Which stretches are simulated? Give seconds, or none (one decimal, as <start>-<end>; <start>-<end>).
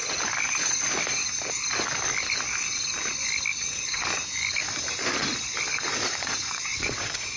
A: 3.5-4.0; 5.9-7.4